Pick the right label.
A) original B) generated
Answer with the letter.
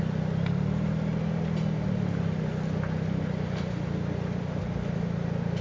A